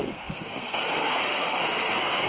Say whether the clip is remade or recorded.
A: remade